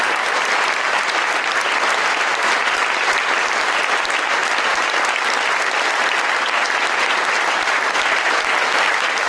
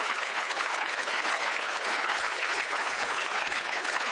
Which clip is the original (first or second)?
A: first